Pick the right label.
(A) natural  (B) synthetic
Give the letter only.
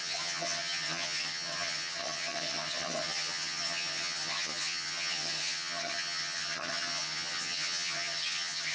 B